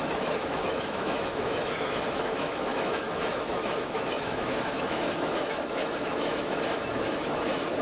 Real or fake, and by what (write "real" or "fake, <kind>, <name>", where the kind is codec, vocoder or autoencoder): fake, autoencoder, DAC-VAE